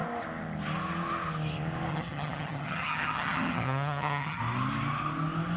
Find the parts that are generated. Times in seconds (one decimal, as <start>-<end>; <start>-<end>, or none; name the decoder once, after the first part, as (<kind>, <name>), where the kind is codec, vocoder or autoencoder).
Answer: 1.9-4.4 (vocoder, HiFi-GAN)